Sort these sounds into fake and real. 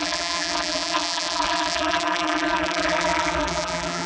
fake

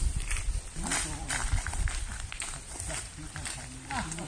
fake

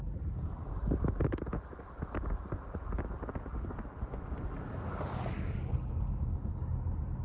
real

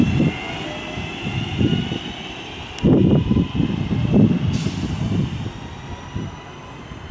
real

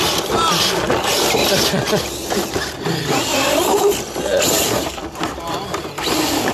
real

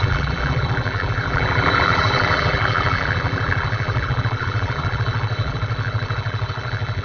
fake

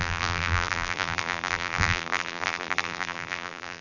fake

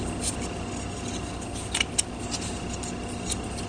real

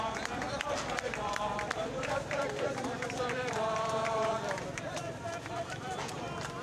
fake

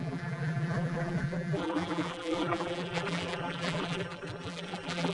fake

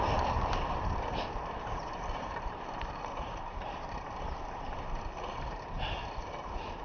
fake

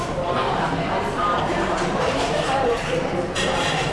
fake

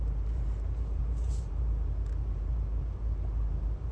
fake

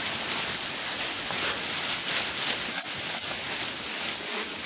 real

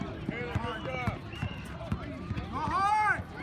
real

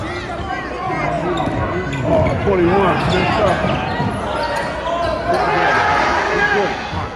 real